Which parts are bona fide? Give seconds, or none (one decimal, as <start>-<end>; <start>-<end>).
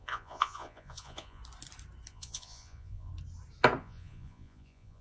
1.4-2.1; 3.1-3.8